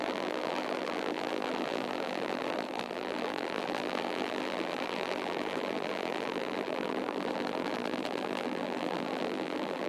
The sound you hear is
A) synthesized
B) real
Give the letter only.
A